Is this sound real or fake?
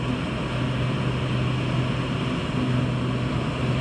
real